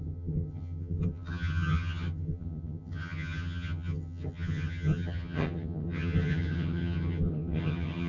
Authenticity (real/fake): fake